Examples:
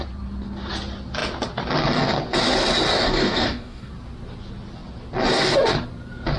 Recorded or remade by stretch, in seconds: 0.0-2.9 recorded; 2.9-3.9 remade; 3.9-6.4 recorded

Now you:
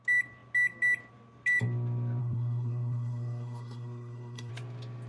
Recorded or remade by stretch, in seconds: 0.0-2.2 recorded; 2.2-4.5 remade; 4.5-5.1 recorded

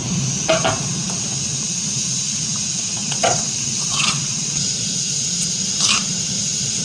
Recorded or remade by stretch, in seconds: 0.0-3.0 recorded; 3.0-4.6 remade; 4.6-6.8 recorded

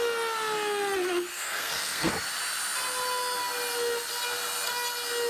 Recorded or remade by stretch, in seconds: 0.0-1.3 recorded; 1.3-2.1 remade; 2.1-5.3 recorded

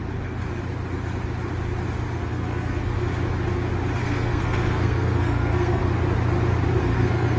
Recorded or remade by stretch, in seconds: 0.0-2.3 recorded; 2.3-3.0 remade; 3.0-4.0 recorded; 4.0-5.8 remade; 5.8-6.8 recorded; 6.8-7.4 remade

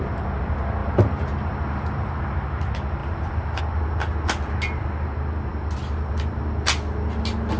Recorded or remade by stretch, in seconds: 0.0-0.8 recorded; 0.8-2.2 remade; 2.2-3.0 recorded; 3.0-3.6 remade; 3.6-7.6 recorded

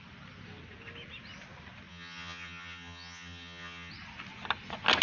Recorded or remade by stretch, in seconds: 0.0-1.9 recorded; 1.9-3.9 remade; 3.9-5.0 recorded